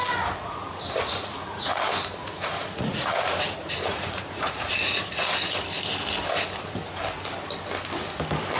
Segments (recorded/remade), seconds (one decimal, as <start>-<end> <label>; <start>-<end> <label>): 0.0-0.4 recorded; 0.4-1.8 remade; 1.8-2.2 recorded; 2.2-5.3 remade; 5.3-8.6 recorded